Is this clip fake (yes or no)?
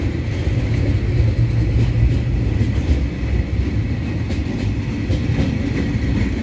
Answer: no